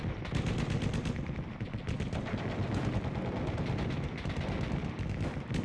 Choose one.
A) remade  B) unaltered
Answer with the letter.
B